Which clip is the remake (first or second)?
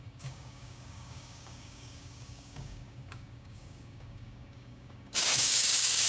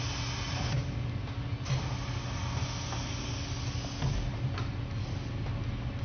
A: first